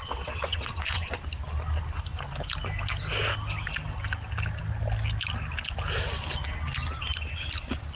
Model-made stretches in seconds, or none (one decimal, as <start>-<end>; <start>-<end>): 0.0-1.2